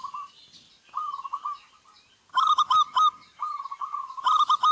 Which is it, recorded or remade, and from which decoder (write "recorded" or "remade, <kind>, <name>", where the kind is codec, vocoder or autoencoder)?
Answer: recorded